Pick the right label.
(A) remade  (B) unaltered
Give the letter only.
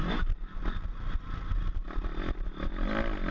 B